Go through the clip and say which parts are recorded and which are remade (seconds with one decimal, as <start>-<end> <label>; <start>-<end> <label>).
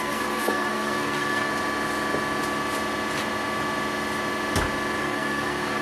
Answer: 0.0-1.5 remade; 1.5-5.0 recorded; 5.0-5.8 remade